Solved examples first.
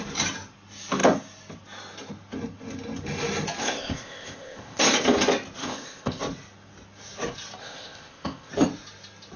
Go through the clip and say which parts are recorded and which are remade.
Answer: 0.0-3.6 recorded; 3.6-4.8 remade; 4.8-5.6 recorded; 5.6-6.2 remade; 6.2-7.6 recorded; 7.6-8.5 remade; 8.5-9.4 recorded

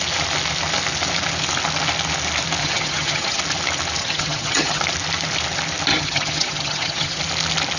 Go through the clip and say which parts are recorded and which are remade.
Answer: 0.0-2.6 recorded; 2.6-3.4 remade; 3.4-4.0 recorded; 4.0-4.8 remade; 4.8-5.9 recorded; 5.9-7.2 remade; 7.2-7.8 recorded

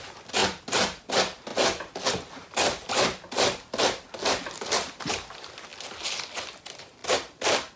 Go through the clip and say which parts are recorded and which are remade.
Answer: 0.0-0.4 remade; 0.4-1.1 recorded; 1.1-1.5 remade; 1.5-5.1 recorded; 5.1-7.0 remade; 7.0-7.8 recorded

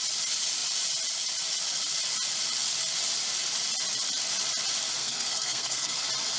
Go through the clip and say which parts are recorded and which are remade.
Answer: 0.0-5.0 recorded; 5.0-6.0 remade; 6.0-6.4 recorded

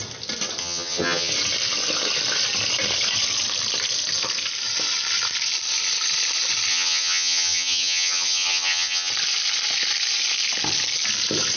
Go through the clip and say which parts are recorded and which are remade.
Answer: 0.0-0.6 recorded; 0.6-1.3 remade; 1.3-6.7 recorded; 6.7-9.1 remade; 9.1-11.6 recorded

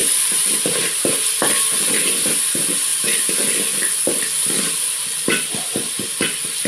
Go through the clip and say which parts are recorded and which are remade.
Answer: 0.0-2.3 remade; 2.3-2.9 recorded; 2.9-5.6 remade; 5.6-6.7 recorded